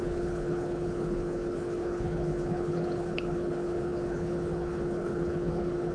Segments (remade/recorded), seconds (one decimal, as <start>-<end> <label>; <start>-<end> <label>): 0.0-5.9 remade